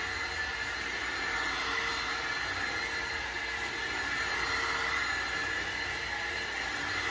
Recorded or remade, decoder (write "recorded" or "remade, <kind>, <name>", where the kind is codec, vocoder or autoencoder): recorded